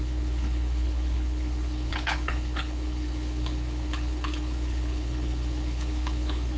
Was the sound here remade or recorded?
remade